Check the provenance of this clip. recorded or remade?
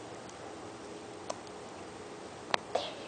remade